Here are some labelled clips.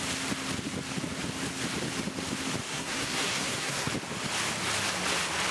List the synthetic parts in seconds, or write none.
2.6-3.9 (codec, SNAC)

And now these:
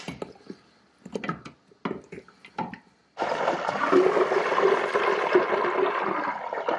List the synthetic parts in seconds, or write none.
none